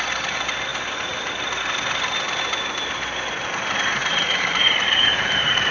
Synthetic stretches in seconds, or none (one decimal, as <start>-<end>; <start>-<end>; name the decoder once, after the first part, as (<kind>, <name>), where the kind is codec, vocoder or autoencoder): 4.0-5.7 (vocoder, BigVGAN v2)